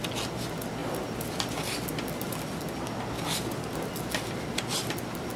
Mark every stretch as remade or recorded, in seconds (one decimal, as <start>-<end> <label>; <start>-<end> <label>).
0.0-5.4 recorded